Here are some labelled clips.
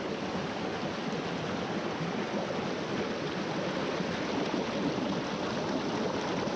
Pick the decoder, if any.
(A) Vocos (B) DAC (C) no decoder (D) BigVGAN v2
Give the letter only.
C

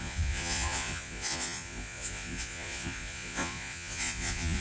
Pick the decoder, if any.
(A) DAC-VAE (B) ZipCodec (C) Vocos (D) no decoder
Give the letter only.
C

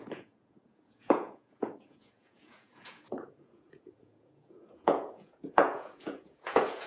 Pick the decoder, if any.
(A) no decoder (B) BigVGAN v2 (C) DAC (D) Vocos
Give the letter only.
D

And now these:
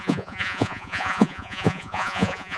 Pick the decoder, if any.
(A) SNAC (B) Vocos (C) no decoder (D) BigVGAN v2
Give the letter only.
B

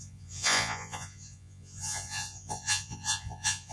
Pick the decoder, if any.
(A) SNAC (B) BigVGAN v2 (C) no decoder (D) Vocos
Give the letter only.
D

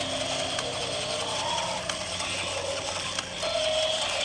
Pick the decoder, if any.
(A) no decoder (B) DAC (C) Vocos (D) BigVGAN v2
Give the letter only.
A